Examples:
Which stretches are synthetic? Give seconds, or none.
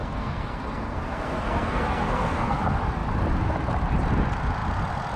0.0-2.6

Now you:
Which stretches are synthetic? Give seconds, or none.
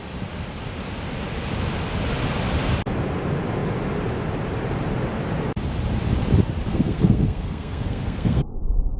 6.7-9.0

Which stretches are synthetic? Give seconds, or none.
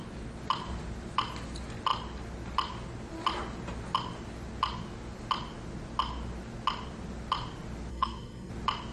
7.9-8.5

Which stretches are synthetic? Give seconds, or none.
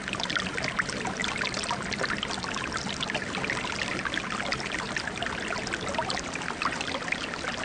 none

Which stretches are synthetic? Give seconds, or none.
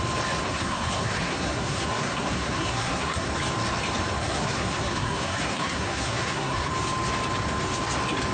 0.5-3.3; 4.2-6.7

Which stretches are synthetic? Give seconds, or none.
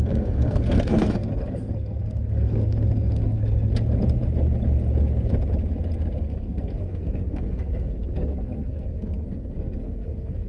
0.0-3.7; 6.2-10.5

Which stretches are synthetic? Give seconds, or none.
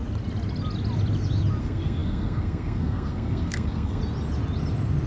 1.6-4.0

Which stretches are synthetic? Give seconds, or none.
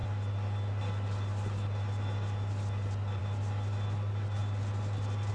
none